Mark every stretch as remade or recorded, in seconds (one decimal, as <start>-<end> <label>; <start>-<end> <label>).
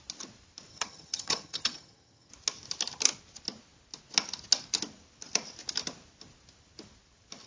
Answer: 0.0-0.7 recorded; 0.7-2.3 remade; 2.3-7.5 recorded